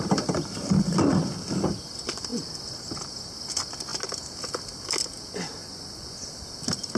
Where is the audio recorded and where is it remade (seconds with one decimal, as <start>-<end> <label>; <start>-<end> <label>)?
0.0-5.6 recorded; 5.6-6.3 remade; 6.3-7.0 recorded